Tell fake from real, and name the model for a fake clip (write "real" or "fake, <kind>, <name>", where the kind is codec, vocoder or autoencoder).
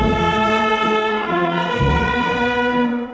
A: fake, vocoder, WaveNeXt